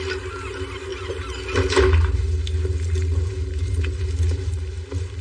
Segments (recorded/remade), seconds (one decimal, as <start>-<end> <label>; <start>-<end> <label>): 0.0-5.2 recorded